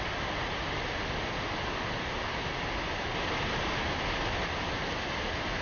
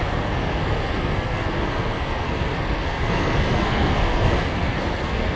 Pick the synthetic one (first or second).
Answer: second